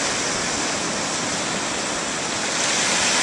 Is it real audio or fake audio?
real